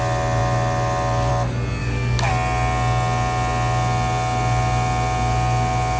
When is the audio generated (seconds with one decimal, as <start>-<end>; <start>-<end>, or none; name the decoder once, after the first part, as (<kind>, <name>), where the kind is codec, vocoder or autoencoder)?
1.8-2.3 (codec, DAC)